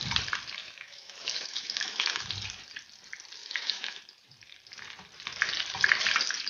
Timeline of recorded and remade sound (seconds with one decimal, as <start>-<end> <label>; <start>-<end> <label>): 0.0-0.6 recorded; 0.6-2.2 remade; 2.2-3.4 recorded; 3.4-4.0 remade; 4.0-6.5 recorded

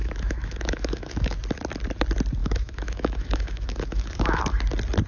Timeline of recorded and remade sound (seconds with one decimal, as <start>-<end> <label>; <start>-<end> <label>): 0.0-1.4 remade; 1.4-2.4 recorded; 2.4-4.4 remade; 4.4-5.1 recorded

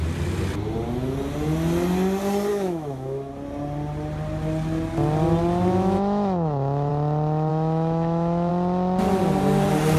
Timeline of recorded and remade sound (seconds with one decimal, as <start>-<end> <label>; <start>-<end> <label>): 0.0-2.5 recorded; 2.5-3.3 remade; 3.3-5.7 recorded; 5.7-6.9 remade; 6.9-7.5 recorded; 7.5-8.5 remade; 8.5-10.0 recorded

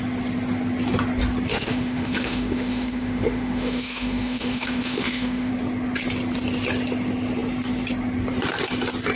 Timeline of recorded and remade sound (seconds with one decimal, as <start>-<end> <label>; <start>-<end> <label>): 0.0-1.5 recorded; 1.5-5.5 remade; 5.5-9.2 recorded

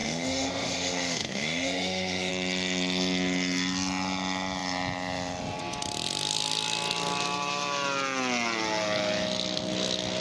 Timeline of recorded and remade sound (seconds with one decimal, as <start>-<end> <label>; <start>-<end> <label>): 0.0-2.3 remade; 2.3-10.2 recorded